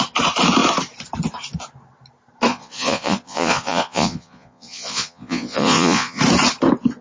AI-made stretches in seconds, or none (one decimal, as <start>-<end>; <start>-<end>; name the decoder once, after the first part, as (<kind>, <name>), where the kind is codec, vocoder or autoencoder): 2.5-6.2 (vocoder, Vocos)